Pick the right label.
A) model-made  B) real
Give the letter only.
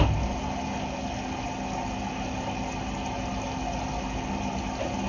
B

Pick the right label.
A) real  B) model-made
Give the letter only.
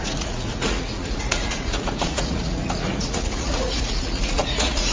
B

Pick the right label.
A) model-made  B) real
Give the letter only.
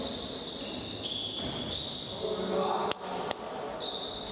B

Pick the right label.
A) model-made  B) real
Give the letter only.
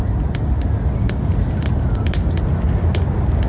B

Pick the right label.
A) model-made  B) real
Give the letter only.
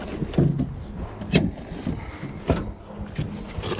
B